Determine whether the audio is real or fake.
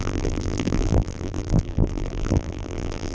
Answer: fake